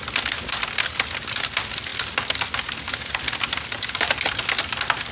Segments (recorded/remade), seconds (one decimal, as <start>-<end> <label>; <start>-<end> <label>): 0.0-5.1 recorded